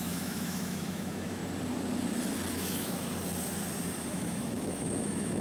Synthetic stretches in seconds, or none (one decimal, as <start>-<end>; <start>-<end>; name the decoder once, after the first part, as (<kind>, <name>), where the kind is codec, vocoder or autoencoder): 0.0-1.4 (autoencoder, DAC-VAE); 2.5-3.1; 4.1-5.4